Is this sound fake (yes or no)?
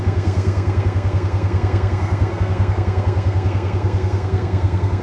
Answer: yes